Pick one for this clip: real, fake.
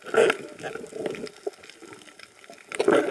real